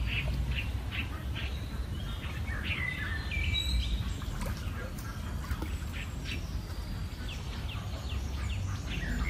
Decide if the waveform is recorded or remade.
recorded